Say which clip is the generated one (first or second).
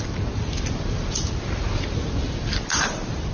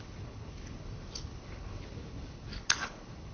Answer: second